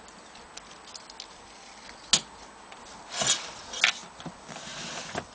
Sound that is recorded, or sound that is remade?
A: recorded